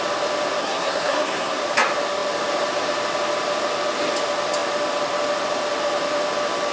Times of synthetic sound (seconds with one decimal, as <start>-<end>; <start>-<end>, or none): 0.6-1.6